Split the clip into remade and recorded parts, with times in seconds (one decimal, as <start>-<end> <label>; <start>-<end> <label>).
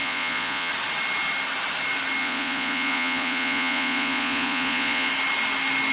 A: 0.0-0.7 remade; 0.7-2.2 recorded; 2.2-5.1 remade; 5.1-5.9 recorded